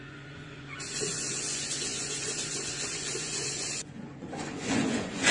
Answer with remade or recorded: remade